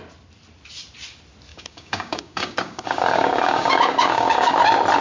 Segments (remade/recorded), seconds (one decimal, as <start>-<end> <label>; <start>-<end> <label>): 0.0-1.5 recorded; 1.5-4.5 remade; 4.5-5.0 recorded